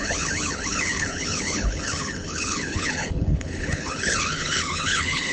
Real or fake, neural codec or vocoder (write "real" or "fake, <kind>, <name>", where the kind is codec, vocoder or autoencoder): fake, codec, HILCodec